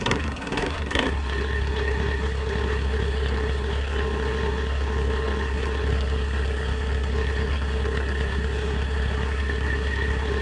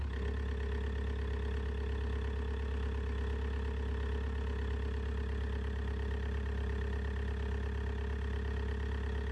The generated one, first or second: first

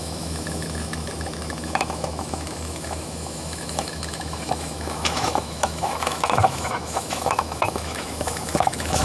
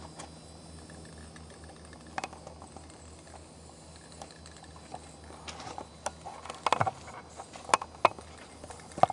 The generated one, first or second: first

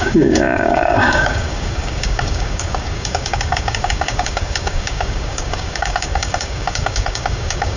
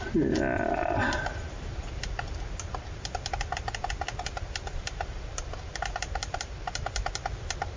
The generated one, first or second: first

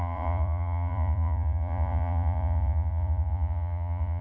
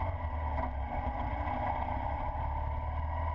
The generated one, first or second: first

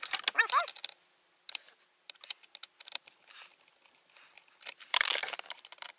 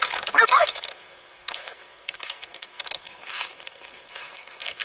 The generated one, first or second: second